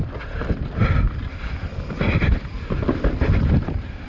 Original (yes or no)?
yes